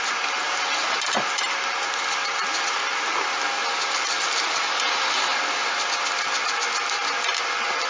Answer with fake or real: real